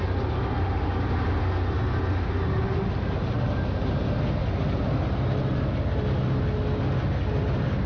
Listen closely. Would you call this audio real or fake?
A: real